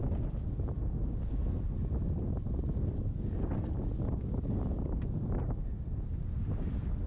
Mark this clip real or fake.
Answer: real